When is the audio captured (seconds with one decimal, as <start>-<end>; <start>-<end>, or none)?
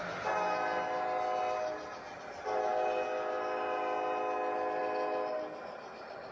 0.0-6.3